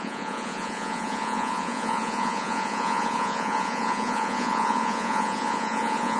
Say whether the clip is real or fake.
fake